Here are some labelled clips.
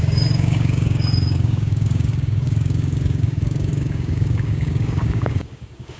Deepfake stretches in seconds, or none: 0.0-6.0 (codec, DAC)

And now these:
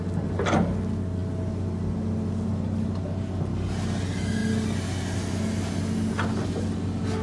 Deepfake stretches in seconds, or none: none

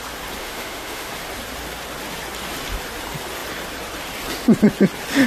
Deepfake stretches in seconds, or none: 0.4-1.1 (autoencoder, DAC-VAE)

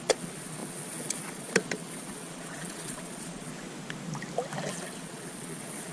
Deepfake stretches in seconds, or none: 0.0-3.5 (vocoder, Vocos); 4.7-5.9

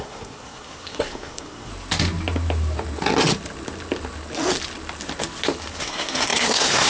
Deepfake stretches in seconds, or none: 0.0-1.7 (codec, SNAC); 5.8-6.9

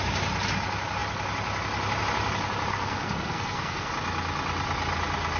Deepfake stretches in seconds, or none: 2.7-3.9 (codec, SNAC)

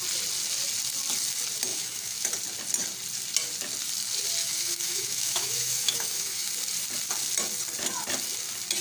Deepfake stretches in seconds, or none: 1.7-2.3 (autoencoder, DAC-VAE); 4.4-6.5

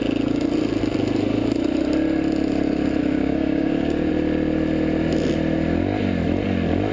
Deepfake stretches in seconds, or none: 3.0-4.1 (codec, DAC)